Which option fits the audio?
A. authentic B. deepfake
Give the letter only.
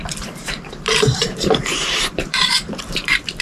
B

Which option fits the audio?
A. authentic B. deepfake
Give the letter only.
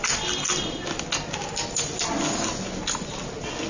A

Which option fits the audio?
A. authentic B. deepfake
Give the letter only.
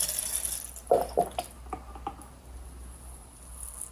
A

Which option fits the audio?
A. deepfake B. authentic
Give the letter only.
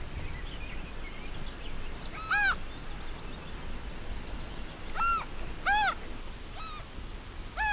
B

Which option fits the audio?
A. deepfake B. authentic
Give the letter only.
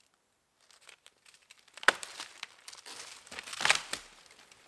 B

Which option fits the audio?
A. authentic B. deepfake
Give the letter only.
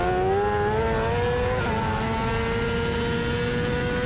A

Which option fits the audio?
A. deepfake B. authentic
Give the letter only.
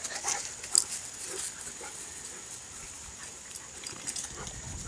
B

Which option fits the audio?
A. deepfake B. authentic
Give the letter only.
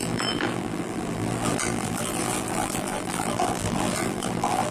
A